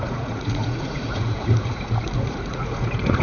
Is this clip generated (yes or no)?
yes